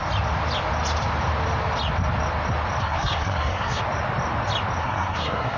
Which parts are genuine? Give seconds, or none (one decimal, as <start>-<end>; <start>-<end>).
0.0-2.8; 3.8-4.8